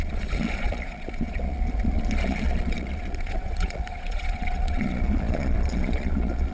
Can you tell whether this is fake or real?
fake